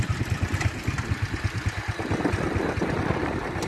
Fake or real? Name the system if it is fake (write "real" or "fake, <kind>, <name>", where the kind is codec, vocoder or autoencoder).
real